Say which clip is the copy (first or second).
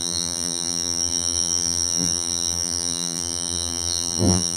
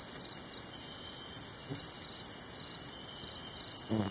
first